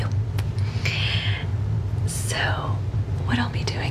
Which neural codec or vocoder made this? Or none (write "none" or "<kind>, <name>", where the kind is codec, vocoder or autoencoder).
none